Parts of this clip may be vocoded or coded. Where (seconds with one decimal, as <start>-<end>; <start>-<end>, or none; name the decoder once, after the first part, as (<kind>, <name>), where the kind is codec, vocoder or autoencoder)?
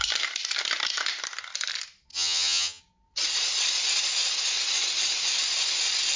2.1-2.8 (vocoder, HiFi-GAN)